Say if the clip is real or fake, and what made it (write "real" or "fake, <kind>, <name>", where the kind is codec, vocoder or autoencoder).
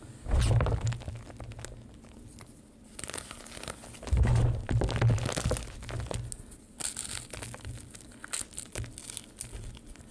real